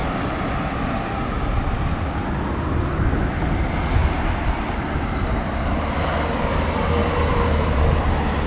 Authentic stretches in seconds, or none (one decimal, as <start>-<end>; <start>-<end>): 0.0-4.0; 5.6-7.0; 7.8-8.5

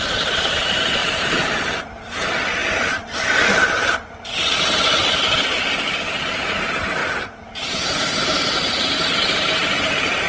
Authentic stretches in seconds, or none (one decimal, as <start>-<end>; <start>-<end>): 0.0-7.0; 9.1-10.3